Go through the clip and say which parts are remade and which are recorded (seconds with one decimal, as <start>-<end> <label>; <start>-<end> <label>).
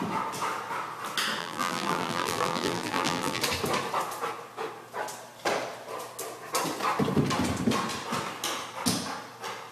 0.0-1.4 recorded; 1.4-3.4 remade; 3.4-9.7 recorded